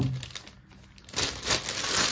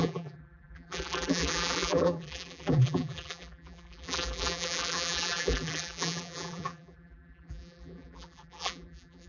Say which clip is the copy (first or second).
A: second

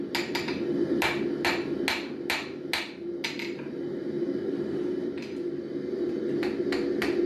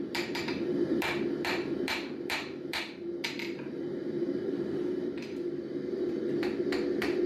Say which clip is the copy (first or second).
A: second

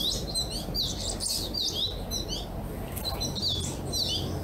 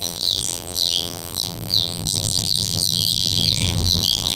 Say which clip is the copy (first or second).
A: second